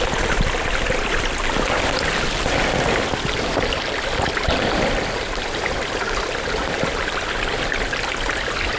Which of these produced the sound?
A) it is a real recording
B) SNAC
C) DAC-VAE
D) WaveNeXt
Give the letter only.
A